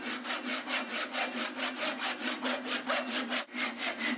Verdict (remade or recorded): recorded